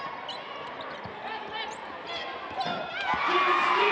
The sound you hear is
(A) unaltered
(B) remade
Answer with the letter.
A